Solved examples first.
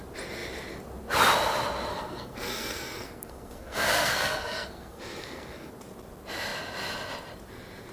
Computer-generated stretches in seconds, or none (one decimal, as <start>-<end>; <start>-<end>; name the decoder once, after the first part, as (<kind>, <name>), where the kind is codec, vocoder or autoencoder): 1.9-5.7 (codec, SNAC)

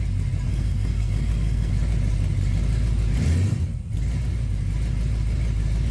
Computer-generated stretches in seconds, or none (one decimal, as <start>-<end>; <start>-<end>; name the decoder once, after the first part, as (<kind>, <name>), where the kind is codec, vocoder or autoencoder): 0.5-1.7 (codec, SNAC)

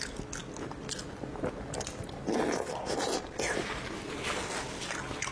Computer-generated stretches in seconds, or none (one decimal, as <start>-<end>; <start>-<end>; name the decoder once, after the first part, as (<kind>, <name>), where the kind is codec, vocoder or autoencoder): none

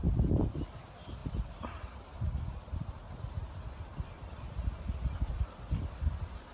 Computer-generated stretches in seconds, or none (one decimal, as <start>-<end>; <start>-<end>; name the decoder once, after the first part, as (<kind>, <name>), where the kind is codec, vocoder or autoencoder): 0.0-1.2 (vocoder, BigVGAN v2); 2.7-6.5

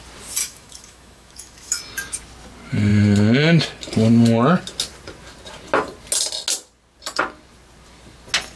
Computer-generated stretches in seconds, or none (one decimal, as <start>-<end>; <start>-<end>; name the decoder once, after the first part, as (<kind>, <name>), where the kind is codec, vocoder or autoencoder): 0.4-1.8 (autoencoder, DAC-VAE)

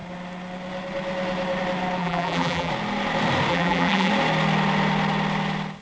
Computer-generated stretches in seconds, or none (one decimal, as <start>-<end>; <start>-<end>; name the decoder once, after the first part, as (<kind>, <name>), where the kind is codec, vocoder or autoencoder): 2.0-2.7 (vocoder, BigVGAN v2); 3.5-4.1